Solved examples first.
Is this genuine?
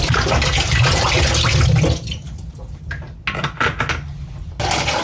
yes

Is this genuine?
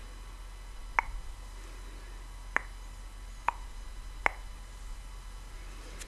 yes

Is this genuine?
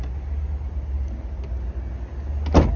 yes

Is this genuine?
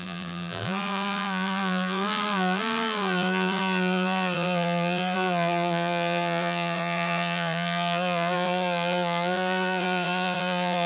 no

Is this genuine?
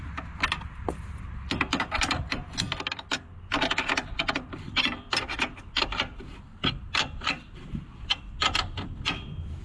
no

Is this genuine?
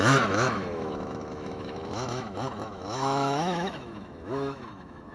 no